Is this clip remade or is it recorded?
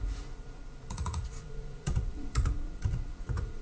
remade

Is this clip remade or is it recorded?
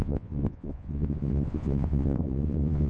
remade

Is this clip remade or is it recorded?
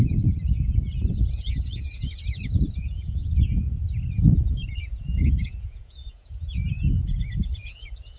remade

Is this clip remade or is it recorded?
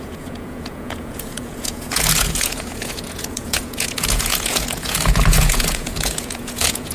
remade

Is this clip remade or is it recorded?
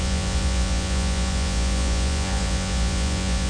remade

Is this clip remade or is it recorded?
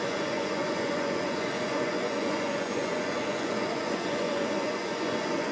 remade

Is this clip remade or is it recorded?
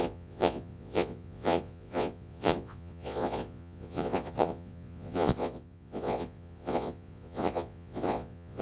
remade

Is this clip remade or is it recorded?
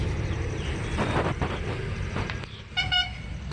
recorded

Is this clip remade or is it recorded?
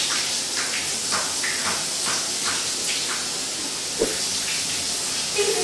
recorded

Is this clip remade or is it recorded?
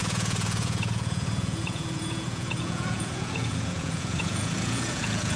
remade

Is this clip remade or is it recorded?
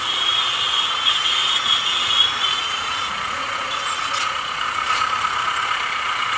remade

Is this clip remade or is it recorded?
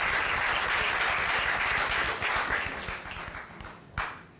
recorded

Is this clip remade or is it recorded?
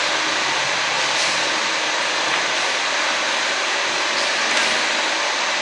recorded